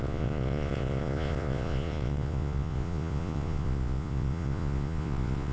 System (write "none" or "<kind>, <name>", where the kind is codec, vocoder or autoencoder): vocoder, Vocos